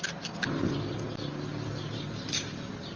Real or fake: real